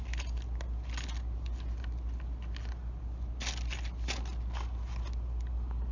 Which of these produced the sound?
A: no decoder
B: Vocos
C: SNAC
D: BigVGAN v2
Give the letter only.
A